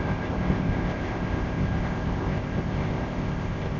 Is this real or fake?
fake